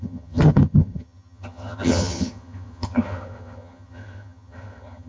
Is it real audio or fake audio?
fake